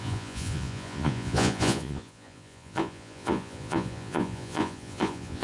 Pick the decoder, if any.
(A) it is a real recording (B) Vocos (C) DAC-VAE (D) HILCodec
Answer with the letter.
B